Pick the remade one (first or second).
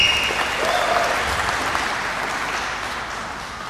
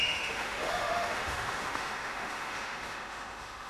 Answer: second